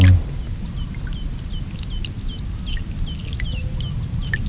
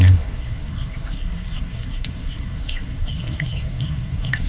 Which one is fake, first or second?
second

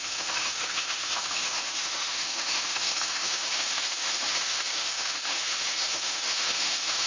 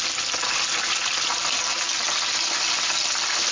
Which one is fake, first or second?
first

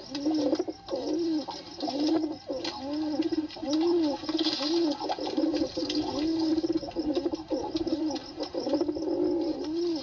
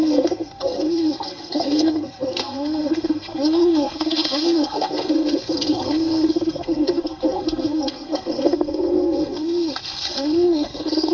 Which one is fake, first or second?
second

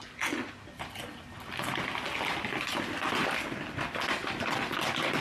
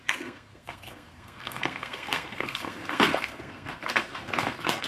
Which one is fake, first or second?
second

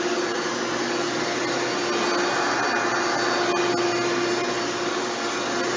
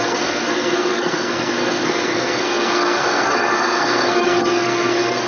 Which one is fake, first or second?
second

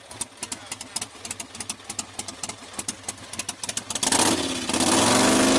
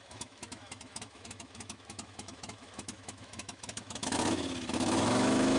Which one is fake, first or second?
second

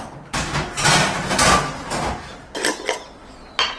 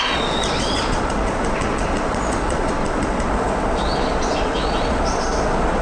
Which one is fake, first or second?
second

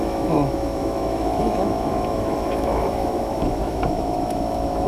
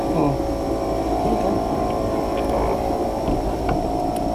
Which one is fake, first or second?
first